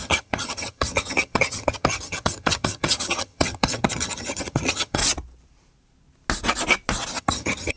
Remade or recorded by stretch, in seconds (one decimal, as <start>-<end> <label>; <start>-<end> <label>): 0.0-5.0 remade; 5.0-7.2 recorded; 7.2-7.8 remade